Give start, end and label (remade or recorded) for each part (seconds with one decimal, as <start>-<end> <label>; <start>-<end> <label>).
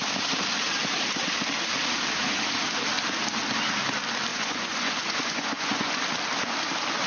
0.0-4.3 recorded; 4.3-6.0 remade; 6.0-7.1 recorded